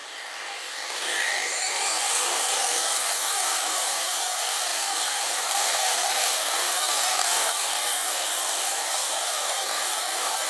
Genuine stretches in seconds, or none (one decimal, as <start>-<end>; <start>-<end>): none